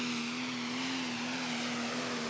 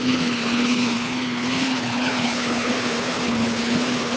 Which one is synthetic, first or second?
second